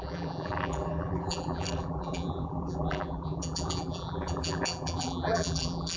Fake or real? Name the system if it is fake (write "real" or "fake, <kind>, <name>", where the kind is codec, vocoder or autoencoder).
fake, vocoder, BigVGAN v2